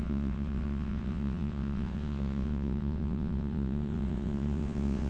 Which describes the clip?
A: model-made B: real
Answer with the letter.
A